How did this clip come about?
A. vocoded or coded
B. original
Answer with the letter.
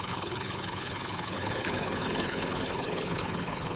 A